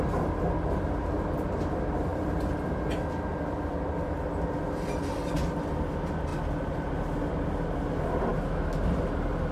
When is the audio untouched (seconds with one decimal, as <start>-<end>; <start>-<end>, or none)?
0.0-8.3; 8.8-9.5